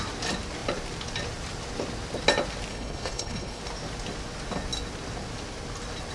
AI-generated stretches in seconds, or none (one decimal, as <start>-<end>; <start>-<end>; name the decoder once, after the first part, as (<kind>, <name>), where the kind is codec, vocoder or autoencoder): 2.7-3.6 (codec, HILCodec)